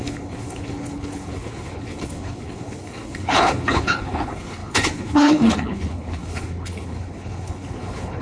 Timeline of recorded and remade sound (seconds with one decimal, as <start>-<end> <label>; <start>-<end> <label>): 0.0-8.2 remade